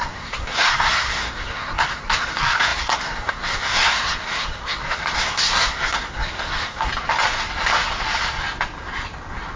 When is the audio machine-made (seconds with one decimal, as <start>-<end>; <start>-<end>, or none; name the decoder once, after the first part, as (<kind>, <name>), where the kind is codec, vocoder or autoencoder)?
0.0-6.9 (codec, SNAC)